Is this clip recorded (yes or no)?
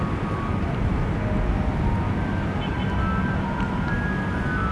yes